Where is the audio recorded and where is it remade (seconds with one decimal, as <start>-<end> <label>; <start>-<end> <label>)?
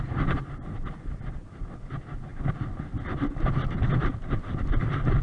0.0-5.2 recorded